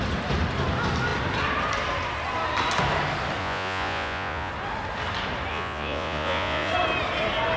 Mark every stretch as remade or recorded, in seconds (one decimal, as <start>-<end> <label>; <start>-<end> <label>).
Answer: 0.0-3.4 recorded; 3.4-4.5 remade; 4.5-5.5 recorded; 5.5-6.7 remade; 6.7-7.6 recorded